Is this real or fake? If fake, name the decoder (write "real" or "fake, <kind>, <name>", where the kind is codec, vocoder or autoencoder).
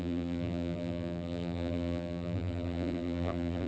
fake, vocoder, BigVGAN v2